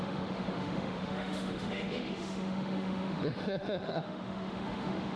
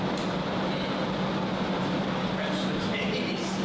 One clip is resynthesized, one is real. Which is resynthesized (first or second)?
first